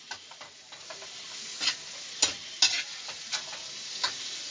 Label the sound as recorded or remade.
recorded